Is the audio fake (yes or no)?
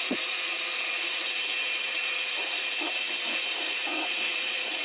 yes